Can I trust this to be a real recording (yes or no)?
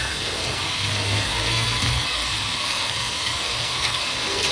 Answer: no